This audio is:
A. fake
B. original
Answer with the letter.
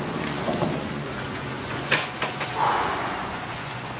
A